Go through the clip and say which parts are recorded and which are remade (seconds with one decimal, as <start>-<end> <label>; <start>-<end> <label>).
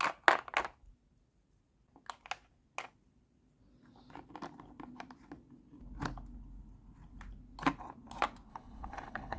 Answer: 0.0-8.5 recorded; 8.5-9.4 remade